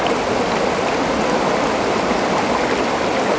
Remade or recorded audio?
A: recorded